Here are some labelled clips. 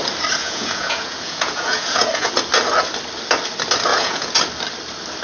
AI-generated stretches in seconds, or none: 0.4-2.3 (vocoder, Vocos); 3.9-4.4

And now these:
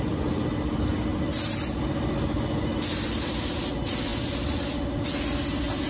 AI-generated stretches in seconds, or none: none

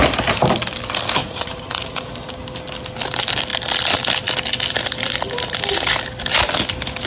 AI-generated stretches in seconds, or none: 1.2-2.0 (vocoder, Vocos)

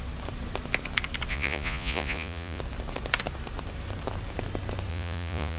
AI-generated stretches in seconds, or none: 1.3-2.6 (vocoder, Vocos); 4.9-5.6

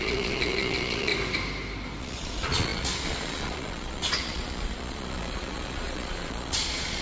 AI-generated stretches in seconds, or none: 0.0-1.1 (vocoder, Vocos); 2.0-7.0

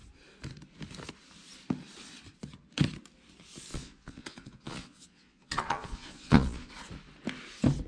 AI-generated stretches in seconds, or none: 3.7-6.7 (vocoder, Vocos)

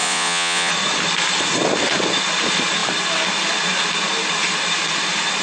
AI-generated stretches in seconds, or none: 0.0-0.7 (vocoder, Vocos)

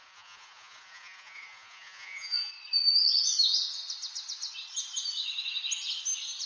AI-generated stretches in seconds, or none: 0.0-2.5 (vocoder, Vocos)